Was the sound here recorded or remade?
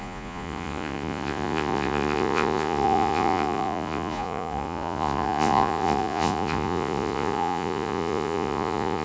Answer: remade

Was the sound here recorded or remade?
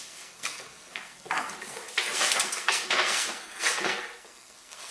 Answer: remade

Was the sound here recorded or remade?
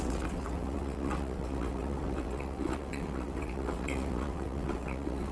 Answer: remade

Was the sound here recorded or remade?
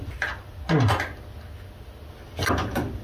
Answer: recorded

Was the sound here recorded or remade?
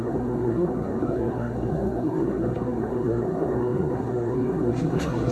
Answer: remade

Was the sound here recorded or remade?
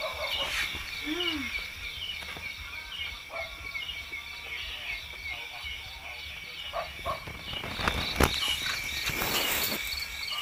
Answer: recorded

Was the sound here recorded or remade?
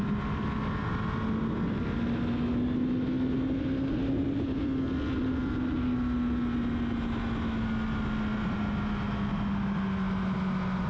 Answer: recorded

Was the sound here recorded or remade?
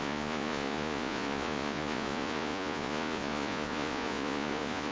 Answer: remade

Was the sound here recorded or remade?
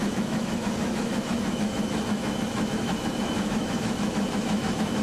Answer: remade